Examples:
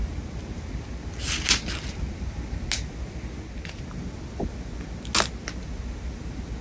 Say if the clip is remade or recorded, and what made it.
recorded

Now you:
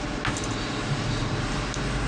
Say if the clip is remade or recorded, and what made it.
recorded